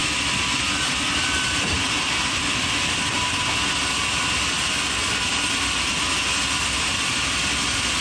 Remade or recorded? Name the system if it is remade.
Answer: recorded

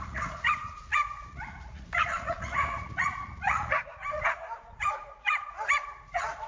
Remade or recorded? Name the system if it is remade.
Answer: remade, vocoder, Vocos